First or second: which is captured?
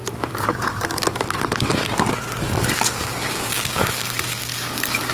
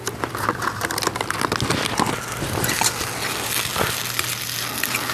second